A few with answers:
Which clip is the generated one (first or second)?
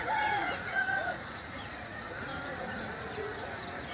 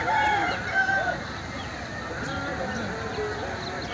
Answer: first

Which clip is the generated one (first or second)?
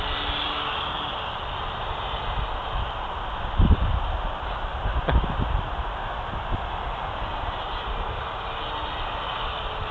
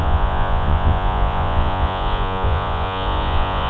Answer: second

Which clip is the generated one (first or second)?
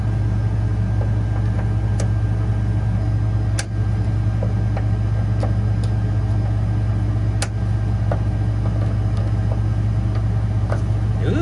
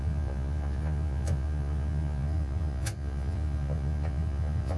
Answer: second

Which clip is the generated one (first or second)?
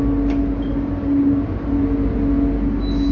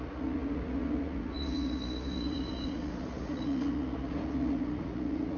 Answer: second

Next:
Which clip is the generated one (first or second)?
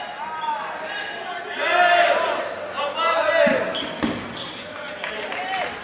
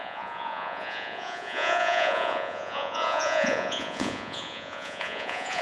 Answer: second